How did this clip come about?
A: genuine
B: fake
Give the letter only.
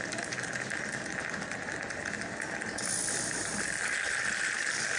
A